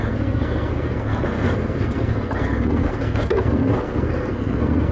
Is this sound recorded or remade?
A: remade